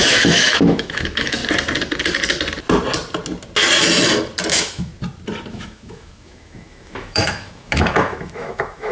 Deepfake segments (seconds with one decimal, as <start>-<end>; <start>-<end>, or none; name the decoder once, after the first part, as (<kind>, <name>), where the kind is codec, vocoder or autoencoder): 0.0-1.4 (autoencoder, DAC-VAE); 4.5-4.9; 5.5-8.9